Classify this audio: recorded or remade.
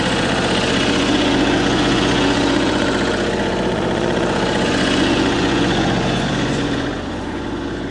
remade